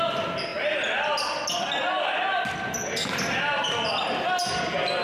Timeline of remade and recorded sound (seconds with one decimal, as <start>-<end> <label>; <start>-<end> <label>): 0.0-5.0 recorded